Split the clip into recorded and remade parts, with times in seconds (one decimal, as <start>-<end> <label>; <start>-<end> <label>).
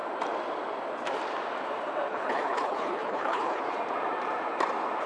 0.0-2.1 recorded; 2.1-3.6 remade; 3.6-5.1 recorded